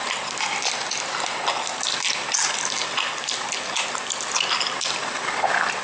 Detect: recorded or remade recorded